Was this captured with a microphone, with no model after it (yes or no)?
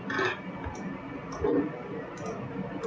yes